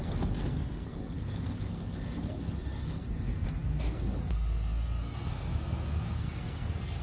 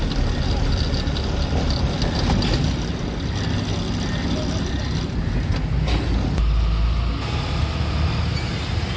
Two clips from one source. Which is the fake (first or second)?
first